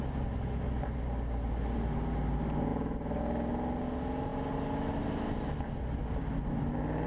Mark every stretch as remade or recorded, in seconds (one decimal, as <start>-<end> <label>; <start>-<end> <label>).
0.0-7.1 recorded